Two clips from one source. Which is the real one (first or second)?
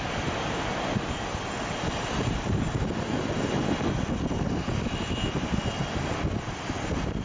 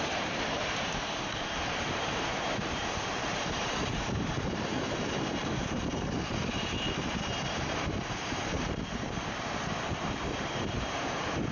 first